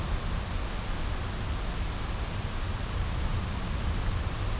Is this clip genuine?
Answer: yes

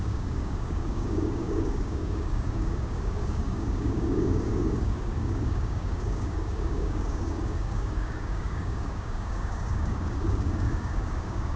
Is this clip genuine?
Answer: no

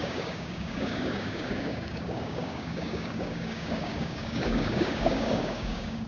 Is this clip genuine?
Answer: no